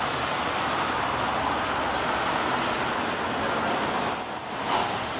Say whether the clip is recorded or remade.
recorded